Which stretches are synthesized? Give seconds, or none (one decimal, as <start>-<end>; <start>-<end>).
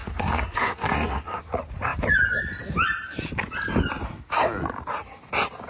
0.0-1.4